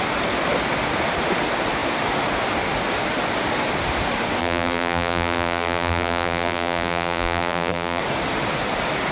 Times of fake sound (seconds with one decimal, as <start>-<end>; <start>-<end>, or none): 4.4-8.0